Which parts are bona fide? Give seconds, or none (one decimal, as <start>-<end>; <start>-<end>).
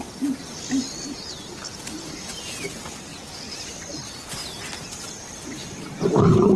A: 0.0-3.1